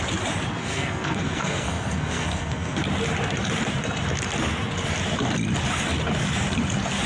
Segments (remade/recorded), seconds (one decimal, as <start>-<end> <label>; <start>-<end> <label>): 0.0-0.6 recorded; 0.6-2.8 remade; 2.8-7.1 recorded